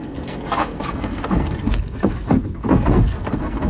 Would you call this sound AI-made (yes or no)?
yes